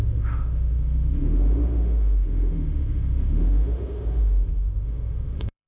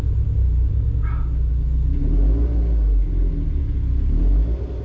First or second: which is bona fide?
second